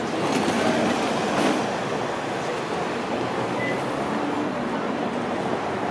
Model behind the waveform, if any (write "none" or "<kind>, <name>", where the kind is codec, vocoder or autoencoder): none